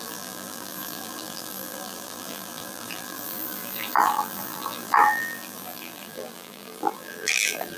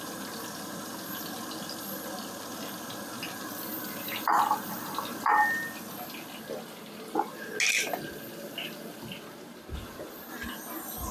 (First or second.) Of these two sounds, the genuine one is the second